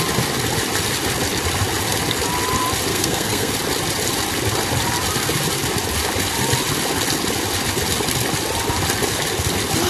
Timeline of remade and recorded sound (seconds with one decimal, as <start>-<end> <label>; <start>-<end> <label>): 0.0-2.9 recorded; 2.9-3.5 remade; 3.5-9.9 recorded